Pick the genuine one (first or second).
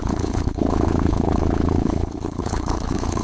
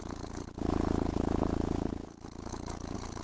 second